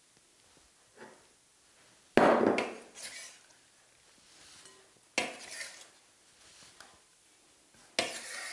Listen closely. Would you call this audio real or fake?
real